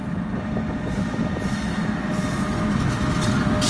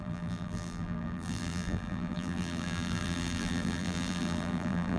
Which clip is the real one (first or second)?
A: first